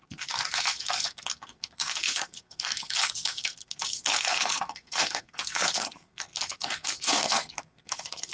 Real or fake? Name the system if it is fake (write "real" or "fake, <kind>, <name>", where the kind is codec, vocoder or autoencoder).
fake, codec, SNAC